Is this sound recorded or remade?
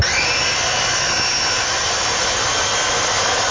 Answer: recorded